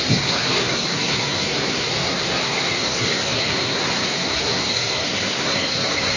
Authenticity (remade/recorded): remade